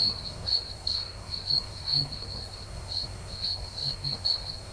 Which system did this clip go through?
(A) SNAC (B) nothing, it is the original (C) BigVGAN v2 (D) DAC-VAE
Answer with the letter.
A